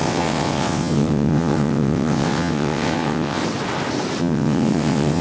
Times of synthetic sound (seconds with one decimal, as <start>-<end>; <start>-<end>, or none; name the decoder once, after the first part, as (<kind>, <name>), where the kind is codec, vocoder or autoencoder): 0.0-3.4 (vocoder, WaveNeXt); 4.2-5.2